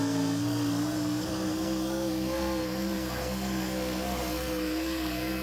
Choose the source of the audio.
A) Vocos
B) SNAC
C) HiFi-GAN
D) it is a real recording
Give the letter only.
B